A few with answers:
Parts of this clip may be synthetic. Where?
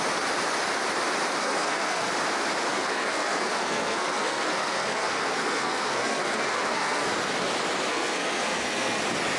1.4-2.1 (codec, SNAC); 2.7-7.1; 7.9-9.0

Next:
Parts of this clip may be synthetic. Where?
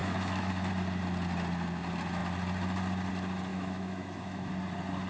0.0-0.7 (autoencoder, DAC-VAE); 3.5-4.5